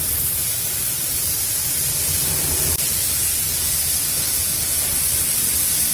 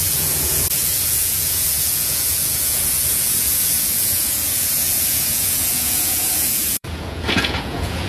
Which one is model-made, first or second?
second